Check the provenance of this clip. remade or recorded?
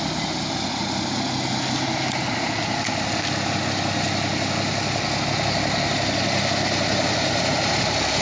recorded